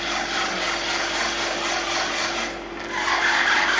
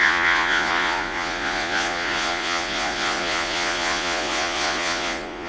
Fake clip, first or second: second